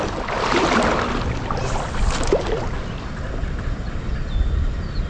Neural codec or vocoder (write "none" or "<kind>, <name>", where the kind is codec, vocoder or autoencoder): none